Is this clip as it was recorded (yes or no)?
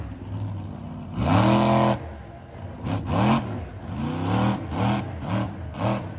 yes